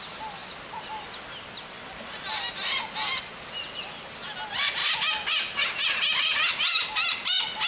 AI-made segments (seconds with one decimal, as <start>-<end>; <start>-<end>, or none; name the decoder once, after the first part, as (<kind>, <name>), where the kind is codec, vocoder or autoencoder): none